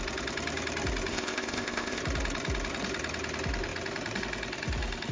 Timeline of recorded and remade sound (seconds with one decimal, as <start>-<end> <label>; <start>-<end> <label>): 0.0-1.1 recorded; 1.1-2.0 remade; 2.0-5.1 recorded